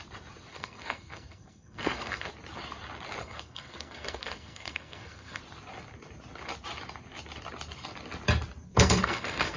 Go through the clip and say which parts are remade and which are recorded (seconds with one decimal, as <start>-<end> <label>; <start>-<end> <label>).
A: 0.0-0.5 recorded; 0.5-2.3 remade; 2.3-3.2 recorded; 3.2-5.4 remade; 5.4-8.7 recorded; 8.7-9.6 remade